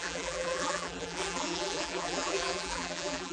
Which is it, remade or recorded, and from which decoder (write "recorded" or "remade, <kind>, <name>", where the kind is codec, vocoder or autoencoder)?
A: remade, vocoder, BigVGAN v2